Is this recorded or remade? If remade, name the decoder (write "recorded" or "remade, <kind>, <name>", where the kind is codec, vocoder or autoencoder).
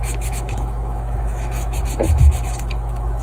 remade, autoencoder, DAC-VAE